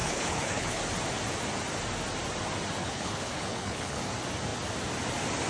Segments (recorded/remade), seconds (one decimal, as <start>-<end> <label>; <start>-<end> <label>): 0.0-0.8 remade; 0.8-2.8 recorded; 2.8-4.0 remade; 4.0-5.5 recorded